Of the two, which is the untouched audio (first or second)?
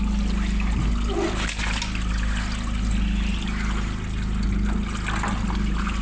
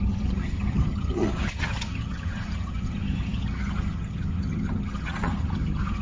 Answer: first